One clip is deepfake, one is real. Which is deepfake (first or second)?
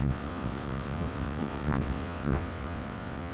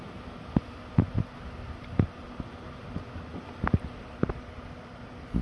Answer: first